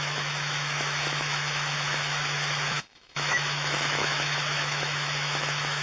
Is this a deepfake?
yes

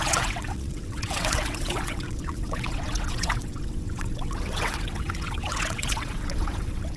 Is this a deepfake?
yes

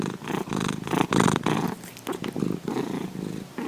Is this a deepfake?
no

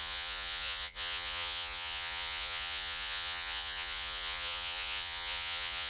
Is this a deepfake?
yes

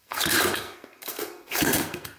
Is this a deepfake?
yes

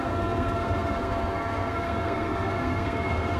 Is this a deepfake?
yes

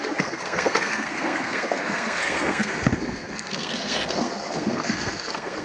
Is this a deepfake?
yes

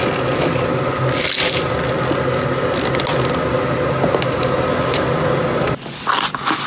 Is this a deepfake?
no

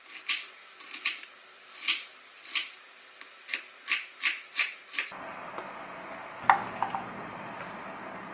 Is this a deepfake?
no